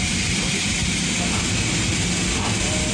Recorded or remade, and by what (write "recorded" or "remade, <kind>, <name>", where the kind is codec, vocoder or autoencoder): recorded